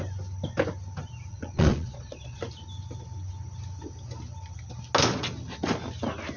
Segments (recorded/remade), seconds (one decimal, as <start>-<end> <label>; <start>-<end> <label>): 0.0-1.3 recorded; 1.3-2.4 remade; 2.4-6.4 recorded